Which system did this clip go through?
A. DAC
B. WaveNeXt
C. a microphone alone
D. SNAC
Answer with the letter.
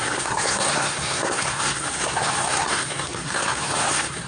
D